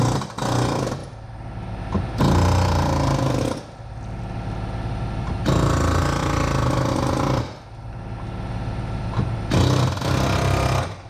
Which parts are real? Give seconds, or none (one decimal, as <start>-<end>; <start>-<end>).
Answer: 0.0-11.1